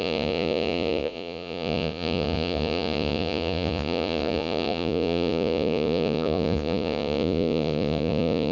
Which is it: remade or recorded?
remade